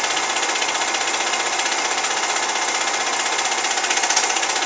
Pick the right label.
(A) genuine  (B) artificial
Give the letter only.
A